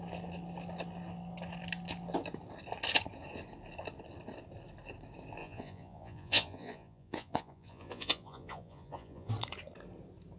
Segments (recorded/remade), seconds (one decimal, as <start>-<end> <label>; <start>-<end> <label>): 0.0-5.4 recorded; 5.4-9.3 remade; 9.3-10.4 recorded